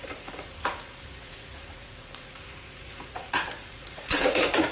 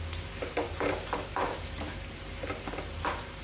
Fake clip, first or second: first